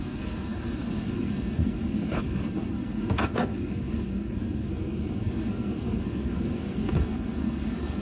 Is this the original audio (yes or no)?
no